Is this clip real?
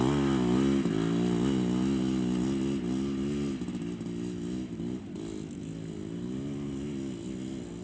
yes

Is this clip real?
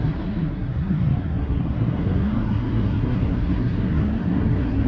no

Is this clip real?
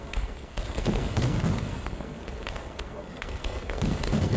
no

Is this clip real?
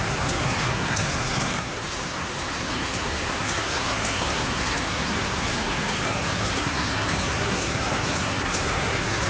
no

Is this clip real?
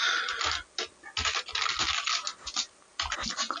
yes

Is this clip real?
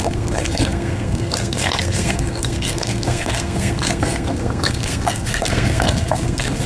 no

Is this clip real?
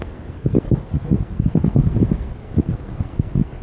no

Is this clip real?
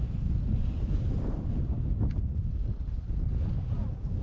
yes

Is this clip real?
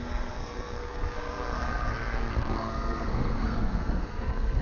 no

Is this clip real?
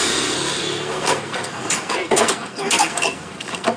no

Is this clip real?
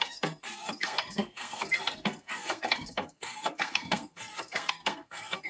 no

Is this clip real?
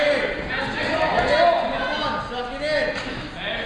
yes